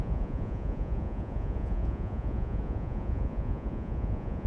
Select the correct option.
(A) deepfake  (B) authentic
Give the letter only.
A